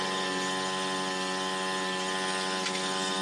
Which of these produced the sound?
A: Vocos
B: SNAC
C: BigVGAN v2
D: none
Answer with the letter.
D